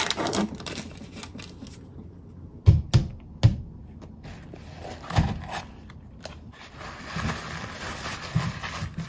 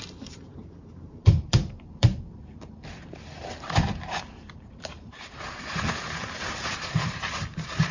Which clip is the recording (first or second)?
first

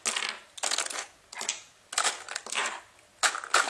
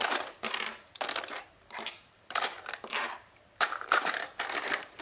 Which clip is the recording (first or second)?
first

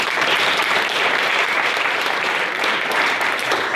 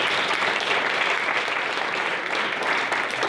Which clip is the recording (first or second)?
second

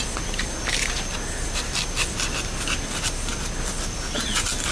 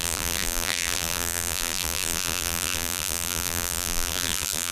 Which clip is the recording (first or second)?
first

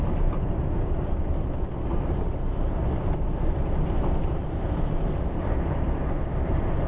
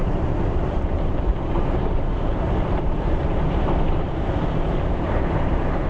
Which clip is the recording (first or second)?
first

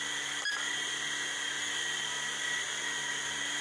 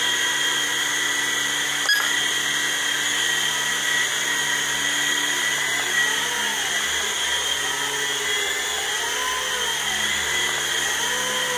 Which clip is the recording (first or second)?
second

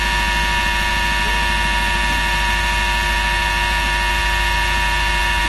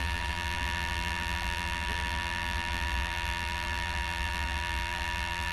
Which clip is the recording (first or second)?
first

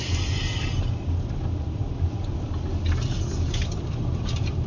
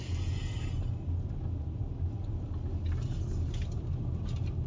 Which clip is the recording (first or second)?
second